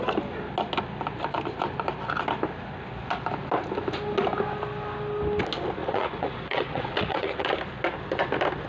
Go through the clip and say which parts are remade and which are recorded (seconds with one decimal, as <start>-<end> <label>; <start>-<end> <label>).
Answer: 0.0-5.8 recorded; 5.8-7.5 remade; 7.5-8.7 recorded